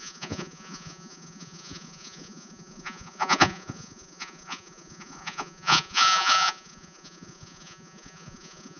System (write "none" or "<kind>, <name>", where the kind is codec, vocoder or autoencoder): vocoder, Vocos